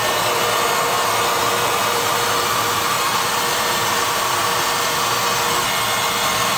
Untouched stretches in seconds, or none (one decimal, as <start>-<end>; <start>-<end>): 0.0-2.5; 4.6-6.6